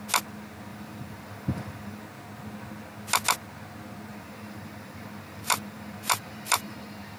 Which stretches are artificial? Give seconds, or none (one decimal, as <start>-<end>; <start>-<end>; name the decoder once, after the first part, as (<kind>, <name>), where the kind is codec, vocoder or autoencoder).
0.7-2.0 (vocoder, BigVGAN v2); 4.1-7.2